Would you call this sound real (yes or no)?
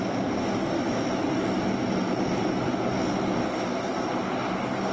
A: yes